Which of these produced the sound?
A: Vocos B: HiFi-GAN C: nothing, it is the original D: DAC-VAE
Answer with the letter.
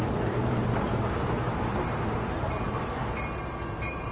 C